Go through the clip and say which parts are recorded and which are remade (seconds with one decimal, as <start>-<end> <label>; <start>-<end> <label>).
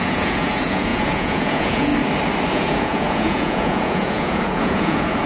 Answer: 0.0-1.9 remade; 1.9-2.5 recorded; 2.5-5.3 remade